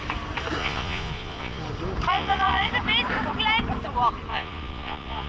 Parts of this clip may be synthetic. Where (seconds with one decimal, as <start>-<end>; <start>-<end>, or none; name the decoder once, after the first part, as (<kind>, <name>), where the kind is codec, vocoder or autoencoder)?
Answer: 0.6-1.6 (vocoder, Vocos); 2.1-2.7; 4.3-5.3